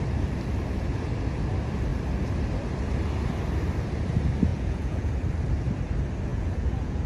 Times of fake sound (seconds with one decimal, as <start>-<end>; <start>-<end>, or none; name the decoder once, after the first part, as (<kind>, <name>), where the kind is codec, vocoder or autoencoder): 4.5-5.1 (vocoder, Vocos); 6.3-7.1